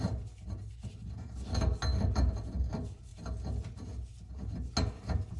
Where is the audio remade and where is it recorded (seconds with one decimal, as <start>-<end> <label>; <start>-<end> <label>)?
0.0-5.4 recorded

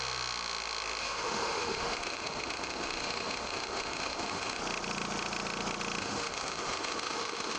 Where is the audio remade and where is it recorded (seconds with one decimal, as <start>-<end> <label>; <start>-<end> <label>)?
0.0-1.0 recorded; 1.0-4.6 remade; 4.6-6.0 recorded; 6.0-7.6 remade

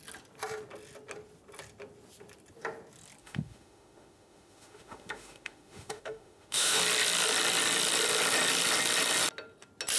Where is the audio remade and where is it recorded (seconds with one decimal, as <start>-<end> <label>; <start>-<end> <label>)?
0.0-3.2 recorded; 3.2-6.8 remade; 6.8-10.0 recorded

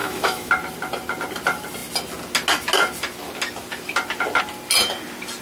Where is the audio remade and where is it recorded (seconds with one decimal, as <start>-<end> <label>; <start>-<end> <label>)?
0.0-0.5 remade; 0.5-5.4 recorded

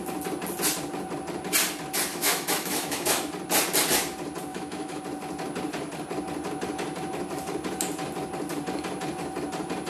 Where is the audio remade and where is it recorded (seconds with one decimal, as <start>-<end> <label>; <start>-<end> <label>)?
0.0-2.1 recorded; 2.1-3.2 remade; 3.2-4.5 recorded; 4.5-5.0 remade; 5.0-9.9 recorded